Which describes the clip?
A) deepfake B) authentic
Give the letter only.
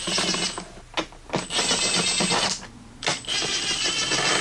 B